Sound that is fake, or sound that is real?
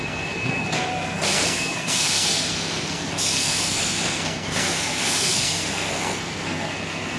fake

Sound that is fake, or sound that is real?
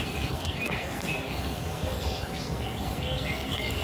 fake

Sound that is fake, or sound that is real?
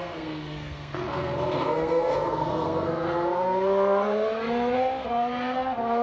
fake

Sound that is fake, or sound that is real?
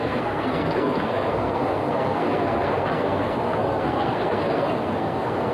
fake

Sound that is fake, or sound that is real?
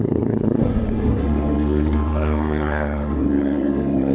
fake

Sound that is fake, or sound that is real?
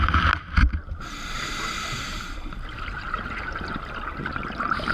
real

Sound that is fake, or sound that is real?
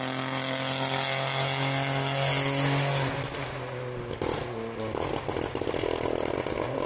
real